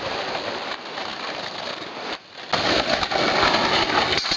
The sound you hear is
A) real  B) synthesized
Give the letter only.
A